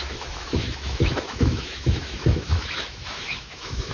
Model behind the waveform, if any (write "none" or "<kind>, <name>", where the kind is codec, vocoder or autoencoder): autoencoder, DAC-VAE